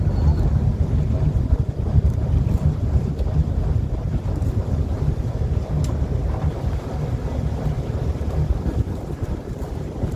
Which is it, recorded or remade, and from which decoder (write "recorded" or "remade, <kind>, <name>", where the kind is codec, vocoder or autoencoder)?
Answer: recorded